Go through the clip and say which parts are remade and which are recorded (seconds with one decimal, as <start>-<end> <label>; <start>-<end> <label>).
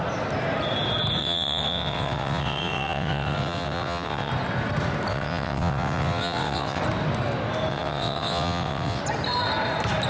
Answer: 0.0-1.2 recorded; 1.2-4.3 remade; 4.3-5.1 recorded; 5.1-6.8 remade; 6.8-7.7 recorded; 7.7-9.0 remade; 9.0-10.1 recorded